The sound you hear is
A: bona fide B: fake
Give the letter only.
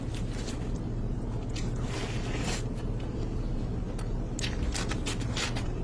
A